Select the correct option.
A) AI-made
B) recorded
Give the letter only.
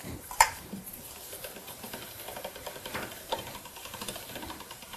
A